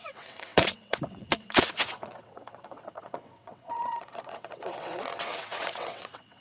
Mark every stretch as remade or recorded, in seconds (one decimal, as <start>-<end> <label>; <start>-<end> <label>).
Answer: 0.0-6.4 remade